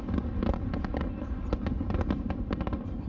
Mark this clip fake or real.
real